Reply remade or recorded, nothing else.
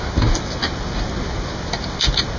recorded